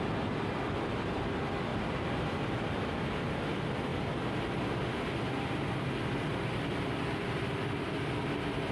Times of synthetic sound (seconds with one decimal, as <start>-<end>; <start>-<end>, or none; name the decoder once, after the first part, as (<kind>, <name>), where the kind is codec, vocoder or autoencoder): 1.7-3.1 (vocoder, BigVGAN v2)